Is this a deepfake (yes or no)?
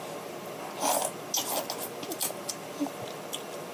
no